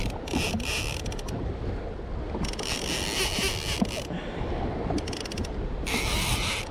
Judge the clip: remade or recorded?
recorded